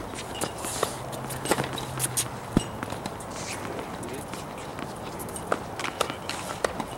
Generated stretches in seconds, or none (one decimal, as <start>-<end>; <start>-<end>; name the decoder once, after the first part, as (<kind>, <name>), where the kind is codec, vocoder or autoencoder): none